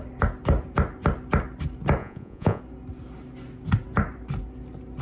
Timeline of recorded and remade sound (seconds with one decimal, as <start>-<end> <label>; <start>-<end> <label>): 0.0-2.0 recorded; 2.0-2.6 remade; 2.6-5.0 recorded

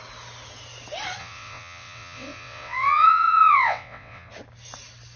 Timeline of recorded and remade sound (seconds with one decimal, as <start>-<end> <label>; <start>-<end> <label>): 0.0-1.2 recorded; 1.2-4.3 remade; 4.3-5.2 recorded

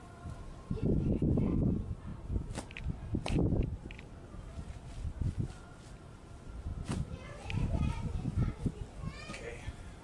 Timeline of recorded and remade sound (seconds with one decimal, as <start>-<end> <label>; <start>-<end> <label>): 0.0-2.1 remade; 2.1-2.7 recorded; 2.7-3.8 remade; 3.8-4.7 recorded; 4.7-9.0 remade; 9.0-10.0 recorded

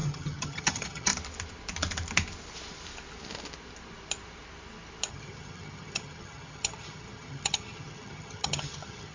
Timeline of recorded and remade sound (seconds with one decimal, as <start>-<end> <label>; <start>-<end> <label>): 0.0-1.1 remade; 1.1-5.1 recorded; 5.1-9.1 remade

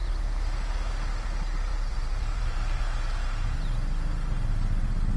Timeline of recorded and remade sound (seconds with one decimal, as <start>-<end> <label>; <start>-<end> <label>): 0.0-1.7 recorded; 1.7-2.8 remade; 2.8-5.2 recorded

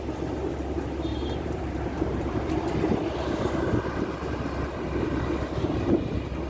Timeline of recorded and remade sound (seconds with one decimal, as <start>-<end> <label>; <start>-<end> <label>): 0.0-1.1 recorded; 1.1-2.5 remade; 2.5-6.5 recorded

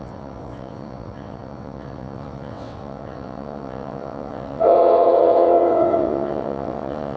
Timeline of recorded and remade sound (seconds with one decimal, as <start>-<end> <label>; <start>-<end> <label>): 0.0-7.2 remade